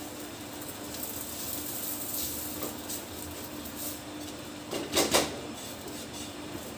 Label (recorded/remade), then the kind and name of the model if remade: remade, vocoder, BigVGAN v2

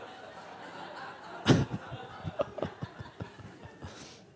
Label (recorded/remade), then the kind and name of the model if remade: recorded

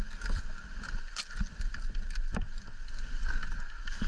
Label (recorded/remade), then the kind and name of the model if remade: recorded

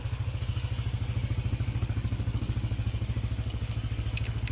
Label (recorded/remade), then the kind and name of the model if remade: remade, codec, DAC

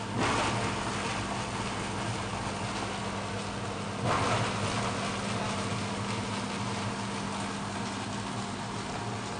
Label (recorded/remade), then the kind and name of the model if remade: recorded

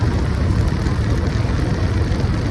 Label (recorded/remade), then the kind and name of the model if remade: recorded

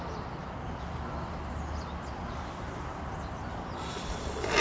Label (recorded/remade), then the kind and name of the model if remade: recorded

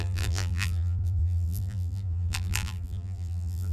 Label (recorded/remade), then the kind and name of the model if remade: remade, vocoder, BigVGAN v2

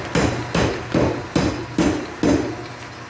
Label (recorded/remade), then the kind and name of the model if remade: recorded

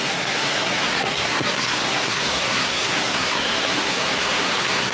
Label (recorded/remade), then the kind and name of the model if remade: remade, codec, SNAC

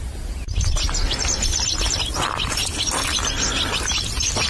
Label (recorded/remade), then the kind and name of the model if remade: recorded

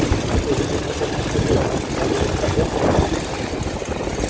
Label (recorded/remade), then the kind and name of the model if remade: recorded